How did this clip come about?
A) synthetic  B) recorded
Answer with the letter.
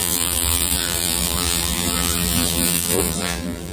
A